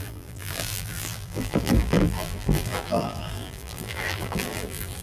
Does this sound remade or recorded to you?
remade